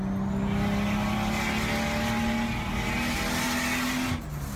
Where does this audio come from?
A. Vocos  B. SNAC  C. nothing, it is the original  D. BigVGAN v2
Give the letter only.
C